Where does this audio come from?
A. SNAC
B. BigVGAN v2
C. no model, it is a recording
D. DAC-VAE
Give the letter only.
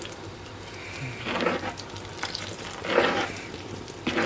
C